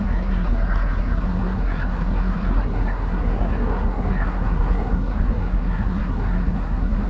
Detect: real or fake fake